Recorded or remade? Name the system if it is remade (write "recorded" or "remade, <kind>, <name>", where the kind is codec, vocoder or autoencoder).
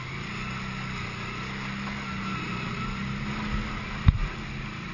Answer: recorded